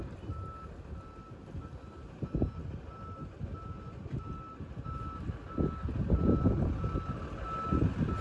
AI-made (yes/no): no